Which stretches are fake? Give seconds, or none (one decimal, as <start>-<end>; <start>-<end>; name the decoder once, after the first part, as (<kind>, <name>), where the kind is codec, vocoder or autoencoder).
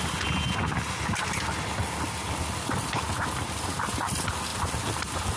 none